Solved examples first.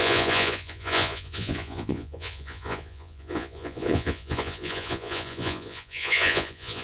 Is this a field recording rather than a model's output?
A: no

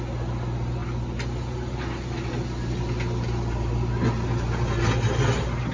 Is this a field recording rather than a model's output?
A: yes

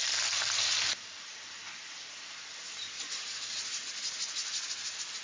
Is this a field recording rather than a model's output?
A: yes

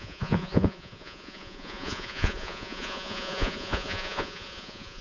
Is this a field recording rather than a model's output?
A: no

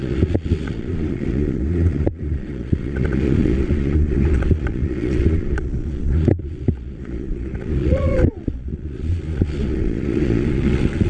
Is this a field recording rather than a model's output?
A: no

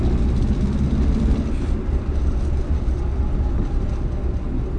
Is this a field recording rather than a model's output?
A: yes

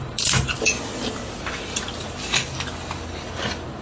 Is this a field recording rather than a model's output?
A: yes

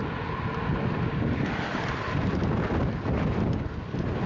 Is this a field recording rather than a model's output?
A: yes